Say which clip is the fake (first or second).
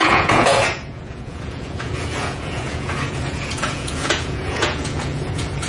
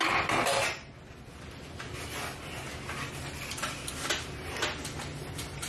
first